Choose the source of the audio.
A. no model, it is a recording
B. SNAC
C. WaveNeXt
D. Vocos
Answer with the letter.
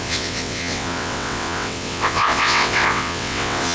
C